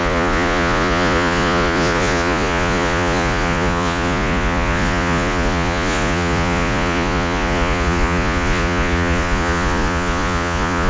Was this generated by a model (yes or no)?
yes